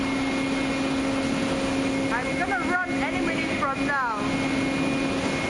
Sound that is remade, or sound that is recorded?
recorded